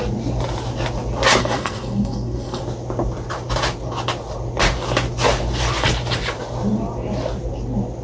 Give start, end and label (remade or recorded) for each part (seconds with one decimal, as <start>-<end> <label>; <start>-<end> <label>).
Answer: 0.0-1.4 recorded; 1.4-2.6 remade; 2.6-8.0 recorded